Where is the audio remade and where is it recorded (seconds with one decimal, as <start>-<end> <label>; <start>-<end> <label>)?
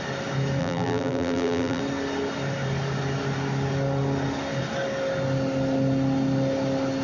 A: 0.0-0.6 recorded; 0.6-1.8 remade; 1.8-7.0 recorded